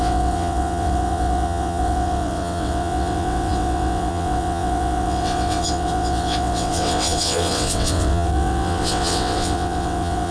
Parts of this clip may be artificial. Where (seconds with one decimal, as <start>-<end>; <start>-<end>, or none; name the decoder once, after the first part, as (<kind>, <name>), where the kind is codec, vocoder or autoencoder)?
0.0-10.3 (vocoder, WaveNeXt)